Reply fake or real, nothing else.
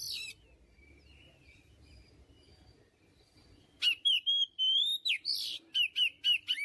real